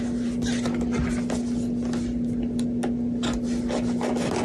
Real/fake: real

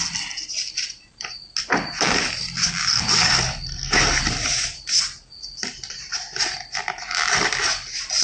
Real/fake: real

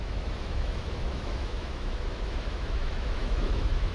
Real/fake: fake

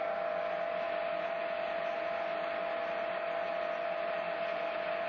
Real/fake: real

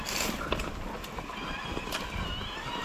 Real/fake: real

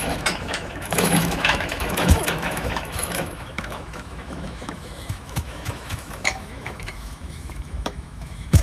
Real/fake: fake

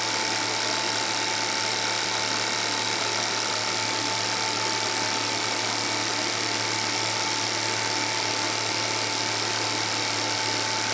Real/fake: real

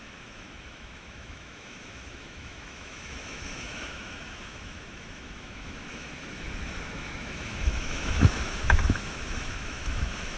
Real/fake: fake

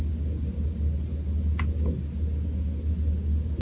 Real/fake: real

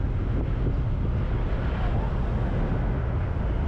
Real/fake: real